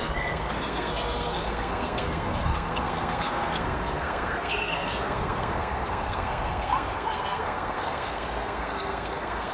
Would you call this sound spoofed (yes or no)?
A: yes